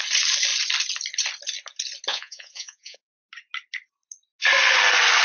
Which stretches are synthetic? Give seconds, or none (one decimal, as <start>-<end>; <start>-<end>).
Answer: 2.1-3.1